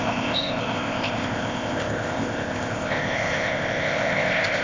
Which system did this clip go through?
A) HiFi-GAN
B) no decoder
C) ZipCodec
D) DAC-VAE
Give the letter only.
C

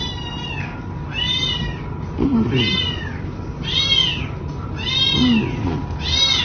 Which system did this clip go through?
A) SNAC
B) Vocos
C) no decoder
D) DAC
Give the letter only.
C